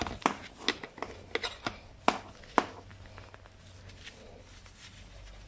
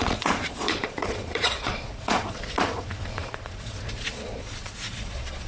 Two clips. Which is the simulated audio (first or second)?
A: second